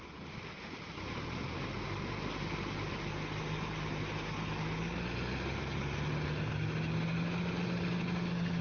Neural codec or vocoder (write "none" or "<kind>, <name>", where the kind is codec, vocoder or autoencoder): none